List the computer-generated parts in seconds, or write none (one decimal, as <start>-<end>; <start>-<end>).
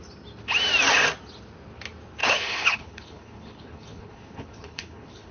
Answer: 2.2-5.3